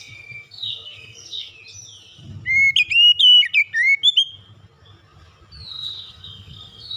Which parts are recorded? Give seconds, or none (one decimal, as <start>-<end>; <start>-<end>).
1.5-5.7